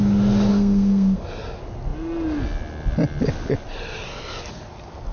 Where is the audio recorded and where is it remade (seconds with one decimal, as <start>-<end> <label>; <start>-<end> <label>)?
0.0-0.5 recorded; 0.5-1.2 remade; 1.2-5.1 recorded

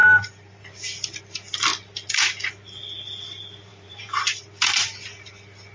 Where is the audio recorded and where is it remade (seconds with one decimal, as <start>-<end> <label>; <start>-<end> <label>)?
0.0-0.6 remade; 0.6-3.7 recorded; 3.7-4.4 remade; 4.4-5.7 recorded